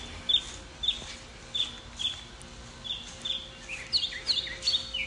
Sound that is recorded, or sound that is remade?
recorded